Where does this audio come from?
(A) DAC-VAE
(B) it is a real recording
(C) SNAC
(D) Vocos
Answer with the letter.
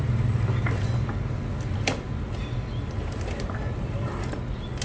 B